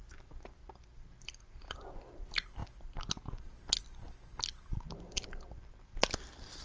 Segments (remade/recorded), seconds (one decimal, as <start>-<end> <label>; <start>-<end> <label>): 0.0-0.6 remade; 0.6-1.2 recorded; 1.2-2.6 remade; 2.6-6.6 recorded